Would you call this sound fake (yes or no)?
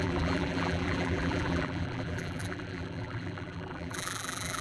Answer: yes